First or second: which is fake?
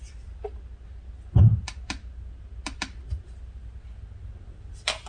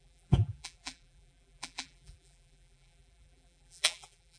second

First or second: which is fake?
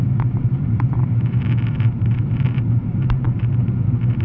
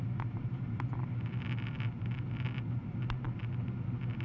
first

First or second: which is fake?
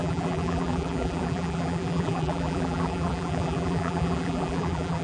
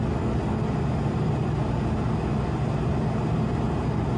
first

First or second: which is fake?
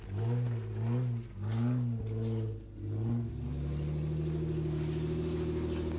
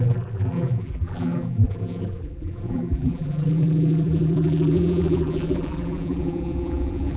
second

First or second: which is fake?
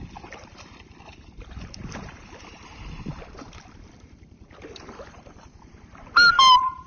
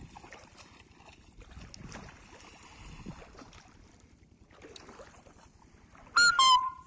first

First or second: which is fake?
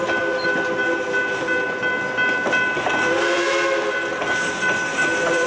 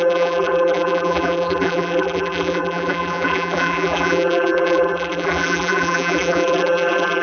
second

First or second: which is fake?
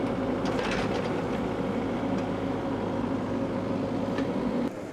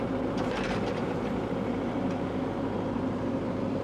second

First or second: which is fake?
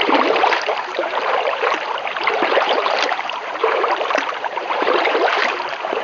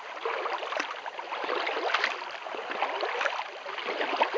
first